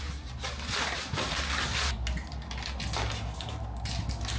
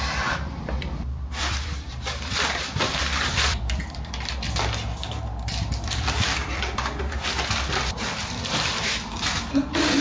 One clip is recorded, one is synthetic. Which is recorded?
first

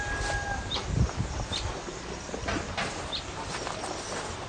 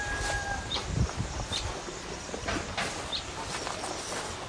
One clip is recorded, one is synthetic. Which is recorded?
first